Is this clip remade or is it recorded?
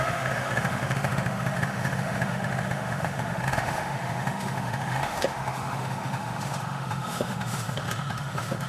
remade